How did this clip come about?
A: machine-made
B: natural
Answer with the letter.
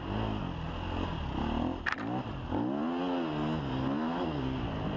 B